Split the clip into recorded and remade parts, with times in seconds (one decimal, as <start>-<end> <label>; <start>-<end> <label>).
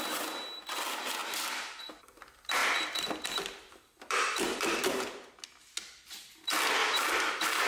0.0-1.2 recorded; 1.2-1.9 remade; 1.9-2.6 recorded; 2.6-5.3 remade; 5.3-6.8 recorded; 6.8-7.7 remade